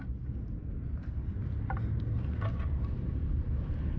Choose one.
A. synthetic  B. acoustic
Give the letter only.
B